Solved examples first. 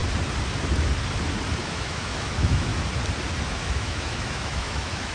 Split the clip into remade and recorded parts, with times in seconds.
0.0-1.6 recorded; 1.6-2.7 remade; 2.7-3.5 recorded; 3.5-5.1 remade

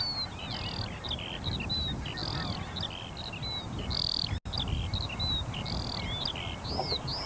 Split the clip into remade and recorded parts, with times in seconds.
0.0-7.3 recorded

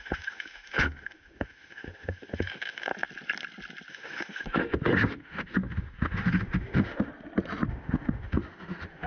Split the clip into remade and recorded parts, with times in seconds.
0.0-2.9 remade; 2.9-3.9 recorded; 3.9-7.1 remade; 7.1-7.7 recorded; 7.7-9.1 remade

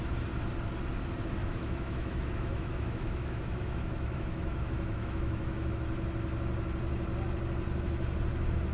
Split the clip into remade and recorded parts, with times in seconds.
0.0-1.4 recorded; 1.4-5.7 remade; 5.7-8.7 recorded